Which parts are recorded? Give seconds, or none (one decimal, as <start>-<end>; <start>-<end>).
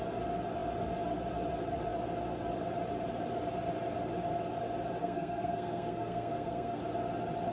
0.0-5.0; 6.8-7.5